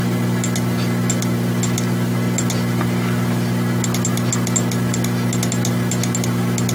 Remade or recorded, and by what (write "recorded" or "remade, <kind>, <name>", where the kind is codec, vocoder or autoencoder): recorded